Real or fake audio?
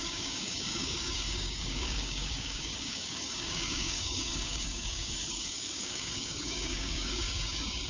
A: fake